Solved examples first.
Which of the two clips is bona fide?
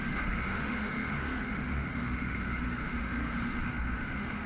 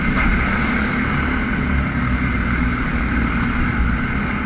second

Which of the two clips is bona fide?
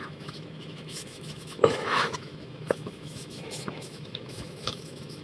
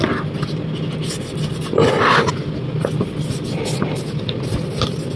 second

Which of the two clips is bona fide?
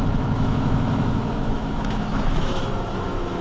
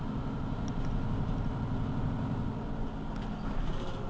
second